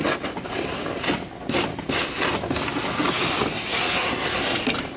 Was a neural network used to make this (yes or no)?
no